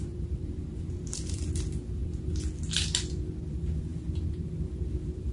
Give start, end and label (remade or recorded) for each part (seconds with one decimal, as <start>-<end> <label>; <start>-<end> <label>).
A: 0.0-2.3 remade; 2.3-3.5 recorded; 3.5-5.3 remade